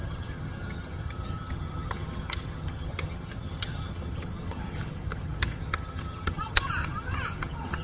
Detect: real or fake fake